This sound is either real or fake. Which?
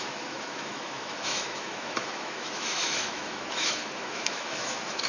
fake